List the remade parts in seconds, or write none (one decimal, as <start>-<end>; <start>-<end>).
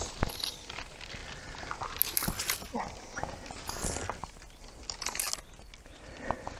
none